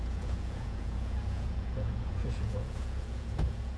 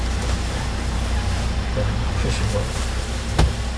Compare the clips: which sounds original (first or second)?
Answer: second